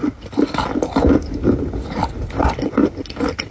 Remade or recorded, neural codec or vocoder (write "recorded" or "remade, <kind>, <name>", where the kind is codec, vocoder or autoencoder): recorded